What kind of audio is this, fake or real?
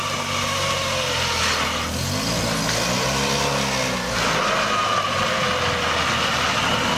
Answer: real